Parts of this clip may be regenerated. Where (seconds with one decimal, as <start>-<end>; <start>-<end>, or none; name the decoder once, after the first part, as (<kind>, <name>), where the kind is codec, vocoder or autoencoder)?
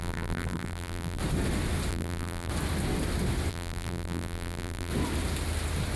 0.0-1.2 (vocoder, BigVGAN v2); 1.9-2.5; 3.5-4.9